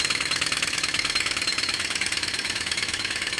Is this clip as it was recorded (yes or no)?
no